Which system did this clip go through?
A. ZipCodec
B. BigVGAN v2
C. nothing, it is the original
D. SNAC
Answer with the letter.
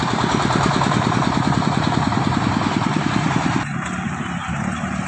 B